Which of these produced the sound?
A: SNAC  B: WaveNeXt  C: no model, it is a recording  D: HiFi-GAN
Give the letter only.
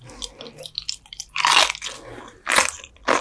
C